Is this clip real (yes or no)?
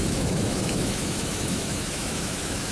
no